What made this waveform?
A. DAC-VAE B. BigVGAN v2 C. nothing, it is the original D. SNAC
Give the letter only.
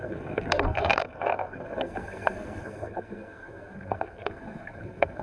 D